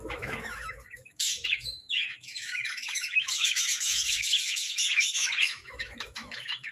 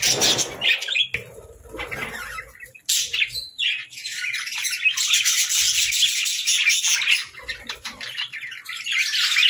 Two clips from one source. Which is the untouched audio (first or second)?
second